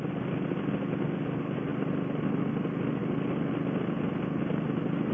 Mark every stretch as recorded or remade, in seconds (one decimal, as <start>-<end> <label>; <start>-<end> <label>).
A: 0.0-5.1 recorded

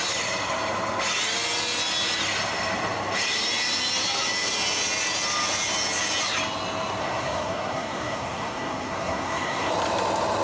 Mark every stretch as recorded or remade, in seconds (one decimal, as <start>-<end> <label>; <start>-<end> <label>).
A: 0.0-7.0 recorded; 7.0-9.7 remade; 9.7-10.4 recorded

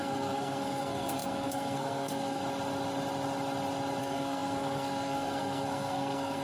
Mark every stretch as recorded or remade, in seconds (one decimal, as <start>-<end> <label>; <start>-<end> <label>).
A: 0.0-2.4 remade; 2.4-4.0 recorded; 4.0-6.4 remade

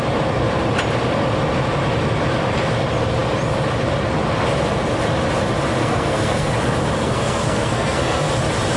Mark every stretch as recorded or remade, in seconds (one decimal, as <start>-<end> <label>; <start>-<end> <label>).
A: 0.0-5.8 recorded; 5.8-6.5 remade; 6.5-7.0 recorded; 7.0-8.3 remade; 8.3-8.8 recorded

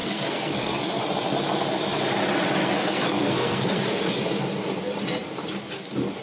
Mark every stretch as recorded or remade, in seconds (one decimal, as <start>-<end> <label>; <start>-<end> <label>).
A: 0.0-1.0 remade; 1.0-2.6 recorded; 2.6-4.1 remade; 4.1-6.2 recorded

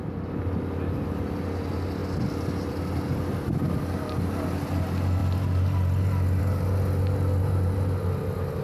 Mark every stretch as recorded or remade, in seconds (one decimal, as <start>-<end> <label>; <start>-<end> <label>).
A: 0.0-8.6 recorded

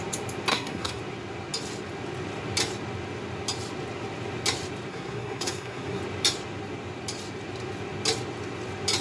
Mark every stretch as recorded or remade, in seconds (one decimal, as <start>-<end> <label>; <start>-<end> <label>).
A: 0.0-0.5 recorded; 0.5-1.0 remade; 1.0-4.9 recorded; 4.9-6.0 remade; 6.0-9.0 recorded